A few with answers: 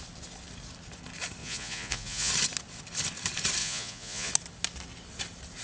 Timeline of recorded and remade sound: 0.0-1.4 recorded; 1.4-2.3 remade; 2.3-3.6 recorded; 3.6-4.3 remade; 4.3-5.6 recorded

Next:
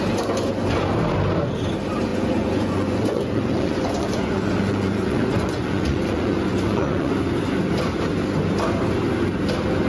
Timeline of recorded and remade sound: 0.0-2.1 recorded; 2.1-7.1 remade; 7.1-9.9 recorded

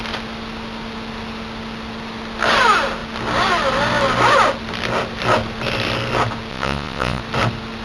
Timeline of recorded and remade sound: 0.0-6.5 recorded; 6.5-7.2 remade; 7.2-7.8 recorded

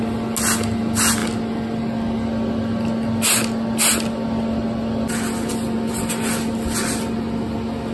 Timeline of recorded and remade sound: 0.0-7.9 recorded

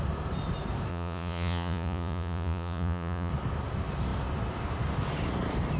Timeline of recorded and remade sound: 0.0-0.9 recorded; 0.9-3.3 remade; 3.3-5.8 recorded

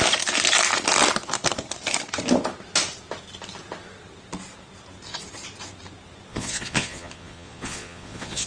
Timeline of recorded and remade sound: 0.0-6.3 recorded; 6.3-8.5 remade

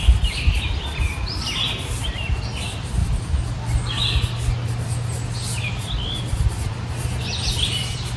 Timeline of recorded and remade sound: 0.0-8.2 recorded